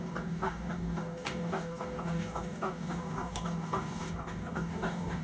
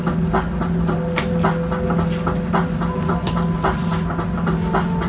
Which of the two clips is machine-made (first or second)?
first